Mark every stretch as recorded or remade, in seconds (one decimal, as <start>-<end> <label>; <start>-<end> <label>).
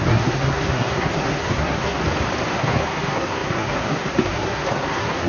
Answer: 0.0-2.0 remade; 2.0-2.5 recorded; 2.5-5.3 remade